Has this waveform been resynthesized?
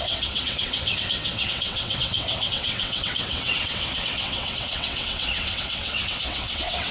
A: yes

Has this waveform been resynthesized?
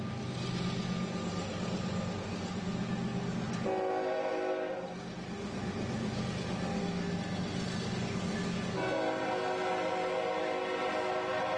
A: no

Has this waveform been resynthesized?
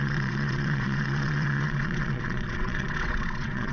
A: yes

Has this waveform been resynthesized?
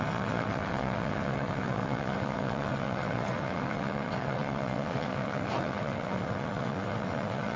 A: yes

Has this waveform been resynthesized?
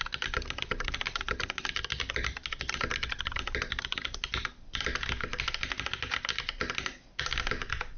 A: no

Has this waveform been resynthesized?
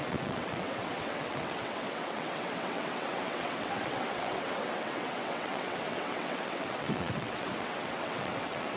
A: yes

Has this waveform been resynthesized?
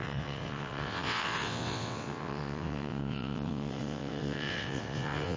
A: yes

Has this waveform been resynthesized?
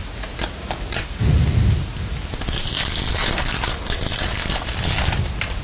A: no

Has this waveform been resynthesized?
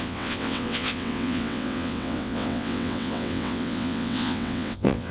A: yes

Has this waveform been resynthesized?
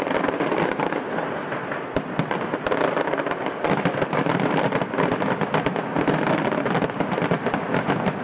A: no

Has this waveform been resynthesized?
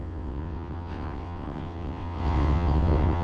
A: yes